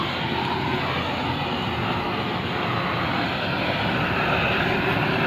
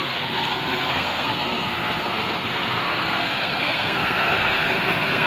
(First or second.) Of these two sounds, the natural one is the first